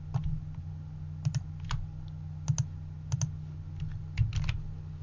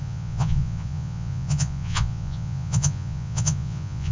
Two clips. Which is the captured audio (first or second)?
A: first